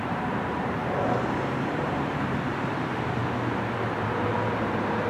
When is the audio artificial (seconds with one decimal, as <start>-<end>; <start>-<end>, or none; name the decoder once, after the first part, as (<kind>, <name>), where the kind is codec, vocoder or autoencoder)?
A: 0.0-3.2 (vocoder, BigVGAN v2); 4.1-5.1